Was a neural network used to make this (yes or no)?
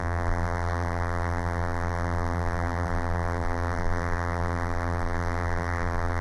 yes